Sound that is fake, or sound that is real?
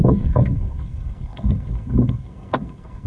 fake